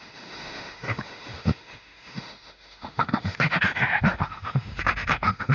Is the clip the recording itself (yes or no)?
no